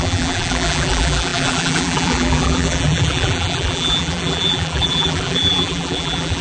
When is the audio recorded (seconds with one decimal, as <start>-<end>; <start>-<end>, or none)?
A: none